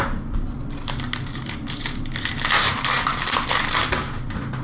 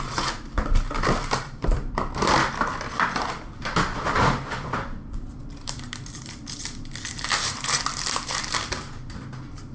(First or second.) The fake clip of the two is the second